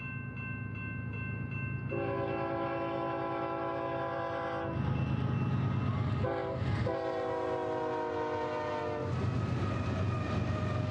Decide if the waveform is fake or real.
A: real